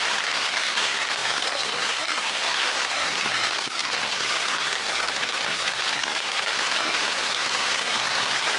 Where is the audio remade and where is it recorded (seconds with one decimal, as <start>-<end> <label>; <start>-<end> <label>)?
0.0-8.6 remade